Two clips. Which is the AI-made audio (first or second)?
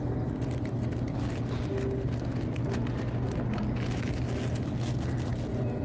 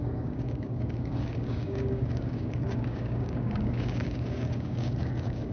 second